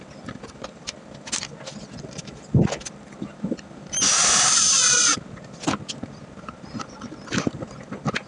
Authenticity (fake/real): real